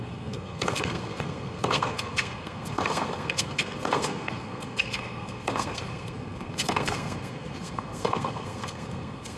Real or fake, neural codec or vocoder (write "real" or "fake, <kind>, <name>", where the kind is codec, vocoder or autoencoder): fake, codec, SNAC